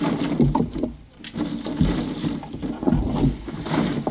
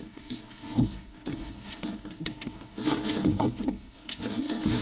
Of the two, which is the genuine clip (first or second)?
first